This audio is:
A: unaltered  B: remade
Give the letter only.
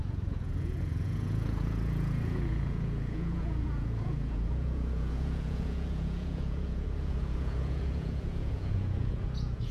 B